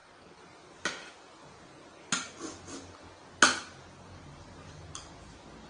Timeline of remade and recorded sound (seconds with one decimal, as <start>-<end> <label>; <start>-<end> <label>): 0.0-5.7 recorded